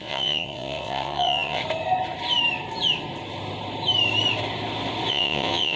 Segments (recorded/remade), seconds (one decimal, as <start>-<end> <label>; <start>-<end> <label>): 0.0-1.6 remade; 1.6-5.1 recorded; 5.1-5.8 remade